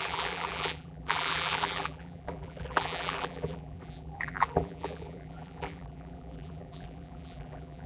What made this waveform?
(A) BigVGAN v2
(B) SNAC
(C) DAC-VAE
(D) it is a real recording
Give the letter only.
A